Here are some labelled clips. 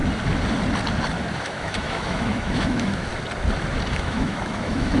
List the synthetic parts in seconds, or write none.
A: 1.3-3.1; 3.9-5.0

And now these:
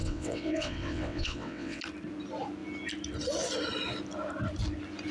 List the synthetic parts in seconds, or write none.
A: 0.0-1.8

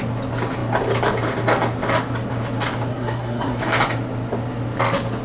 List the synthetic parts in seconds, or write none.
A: 2.9-3.6

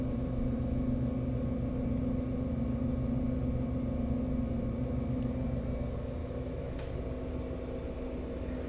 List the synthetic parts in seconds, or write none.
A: 6.2-6.9